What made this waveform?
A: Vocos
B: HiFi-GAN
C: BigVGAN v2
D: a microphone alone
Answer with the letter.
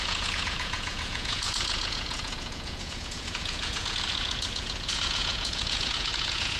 A